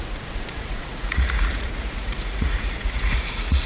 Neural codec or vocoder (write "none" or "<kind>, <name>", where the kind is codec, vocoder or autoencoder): vocoder, Vocos